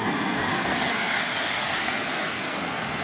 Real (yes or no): no